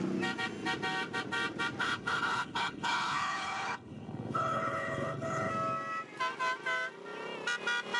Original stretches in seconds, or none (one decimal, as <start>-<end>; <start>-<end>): 0.0-1.8; 5.5-8.0